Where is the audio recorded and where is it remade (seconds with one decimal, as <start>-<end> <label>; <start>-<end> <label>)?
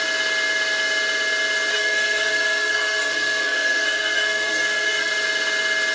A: 0.0-1.7 recorded; 1.7-5.1 remade; 5.1-5.9 recorded